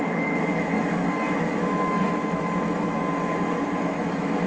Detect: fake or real fake